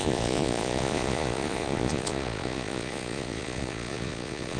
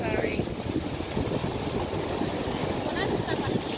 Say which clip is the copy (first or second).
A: first